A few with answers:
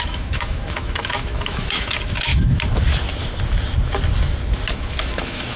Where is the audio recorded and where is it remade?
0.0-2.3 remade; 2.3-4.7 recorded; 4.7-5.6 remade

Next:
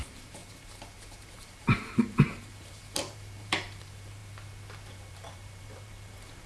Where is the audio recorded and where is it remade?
0.0-0.4 remade; 0.4-1.3 recorded; 1.3-4.2 remade; 4.2-4.9 recorded; 4.9-6.5 remade

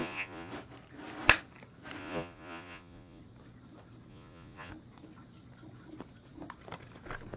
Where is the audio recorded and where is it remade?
0.0-0.5 remade; 0.5-2.0 recorded; 2.0-3.2 remade; 3.2-4.1 recorded; 4.1-4.7 remade; 4.7-7.4 recorded

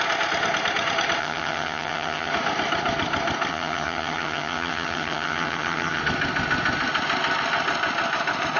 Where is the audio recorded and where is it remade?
0.0-1.2 recorded; 1.2-2.3 remade; 2.3-3.5 recorded; 3.5-6.0 remade; 6.0-8.6 recorded

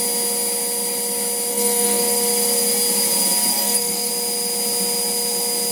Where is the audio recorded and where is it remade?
0.0-1.5 recorded; 1.5-2.0 remade; 2.0-3.5 recorded; 3.5-4.1 remade; 4.1-5.7 recorded

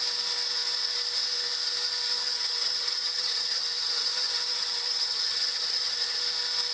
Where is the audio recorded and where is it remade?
0.0-2.2 recorded; 2.2-6.2 remade; 6.2-6.7 recorded